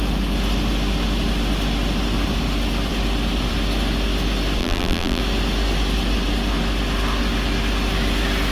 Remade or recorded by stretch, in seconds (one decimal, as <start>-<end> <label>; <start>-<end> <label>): 0.0-4.6 recorded; 4.6-5.2 remade; 5.2-8.5 recorded